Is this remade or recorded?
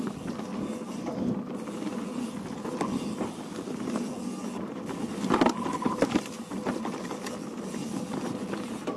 recorded